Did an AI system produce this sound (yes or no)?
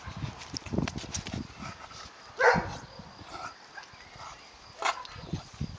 no